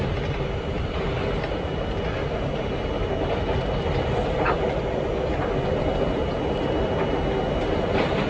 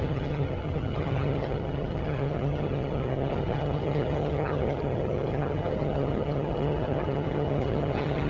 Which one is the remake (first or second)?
second